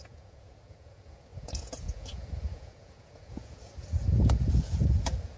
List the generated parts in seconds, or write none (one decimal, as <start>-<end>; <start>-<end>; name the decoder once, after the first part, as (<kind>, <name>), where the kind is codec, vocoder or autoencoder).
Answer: 0.0-5.4 (vocoder, Vocos)